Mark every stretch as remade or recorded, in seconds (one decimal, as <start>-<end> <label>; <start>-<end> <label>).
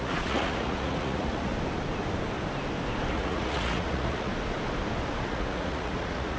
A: 0.0-1.5 remade; 1.5-3.1 recorded; 3.1-4.3 remade; 4.3-5.2 recorded; 5.2-6.4 remade